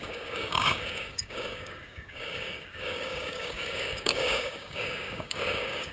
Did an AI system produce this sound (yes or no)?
yes